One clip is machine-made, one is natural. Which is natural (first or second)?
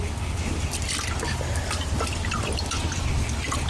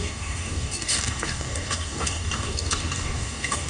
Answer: first